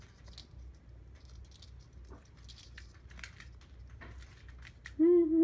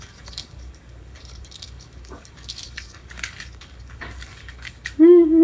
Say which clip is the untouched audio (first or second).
first